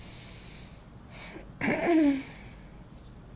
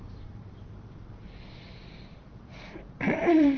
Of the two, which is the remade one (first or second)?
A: second